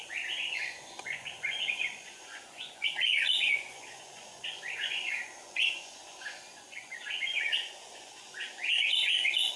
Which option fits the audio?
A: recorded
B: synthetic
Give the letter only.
B